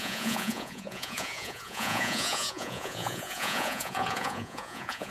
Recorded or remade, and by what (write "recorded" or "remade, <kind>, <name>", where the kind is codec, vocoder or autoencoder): remade, vocoder, Vocos